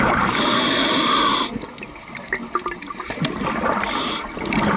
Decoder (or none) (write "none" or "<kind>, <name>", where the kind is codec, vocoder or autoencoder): none